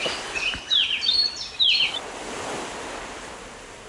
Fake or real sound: real